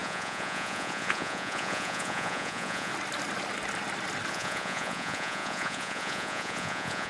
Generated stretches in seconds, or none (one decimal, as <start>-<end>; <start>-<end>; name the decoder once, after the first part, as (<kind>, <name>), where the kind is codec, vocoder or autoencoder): 0.0-2.9 (vocoder, Vocos); 4.3-7.1